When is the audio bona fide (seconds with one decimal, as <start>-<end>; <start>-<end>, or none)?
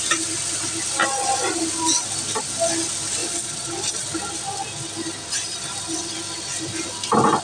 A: 0.0-3.2; 3.7-7.4